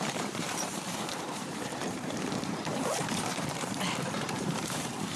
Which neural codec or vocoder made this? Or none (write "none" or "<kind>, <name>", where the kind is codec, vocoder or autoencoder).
vocoder, BigVGAN v2